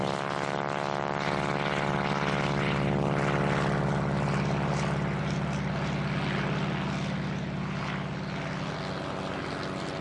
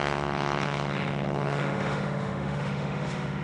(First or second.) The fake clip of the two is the second